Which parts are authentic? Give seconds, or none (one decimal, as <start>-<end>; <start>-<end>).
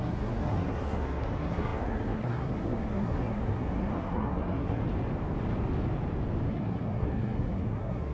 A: 4.8-6.5